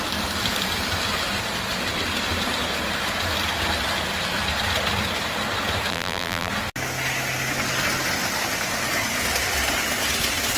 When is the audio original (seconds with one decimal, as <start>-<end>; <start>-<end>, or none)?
0.0-5.9; 6.5-10.6